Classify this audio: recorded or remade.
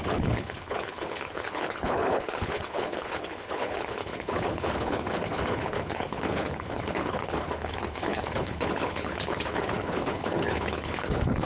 remade